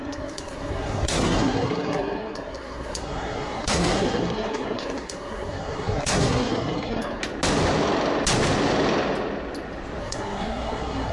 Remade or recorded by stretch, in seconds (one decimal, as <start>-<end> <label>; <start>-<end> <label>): 0.0-7.2 remade; 7.2-10.0 recorded; 10.0-11.1 remade